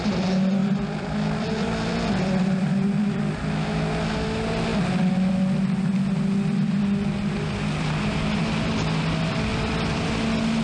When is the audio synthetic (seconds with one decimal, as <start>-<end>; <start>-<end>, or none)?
0.6-3.2; 9.5-10.1